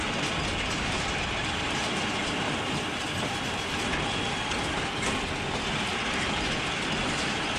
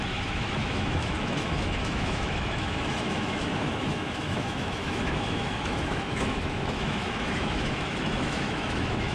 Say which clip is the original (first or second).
first